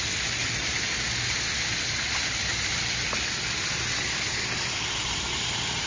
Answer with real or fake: real